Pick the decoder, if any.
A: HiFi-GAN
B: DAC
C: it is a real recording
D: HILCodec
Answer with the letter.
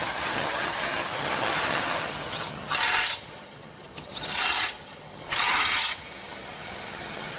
A